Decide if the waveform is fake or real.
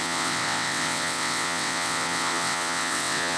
fake